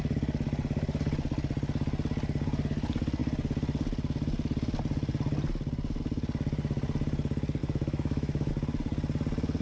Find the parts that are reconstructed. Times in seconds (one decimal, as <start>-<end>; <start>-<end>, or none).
7.6-8.5